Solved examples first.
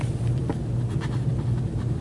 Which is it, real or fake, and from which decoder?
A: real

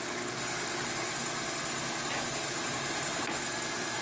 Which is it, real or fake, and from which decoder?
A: real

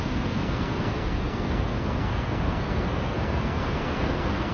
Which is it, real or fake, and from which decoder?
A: fake, codec, SNAC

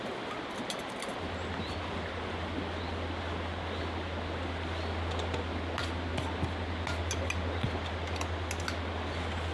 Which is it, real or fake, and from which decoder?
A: real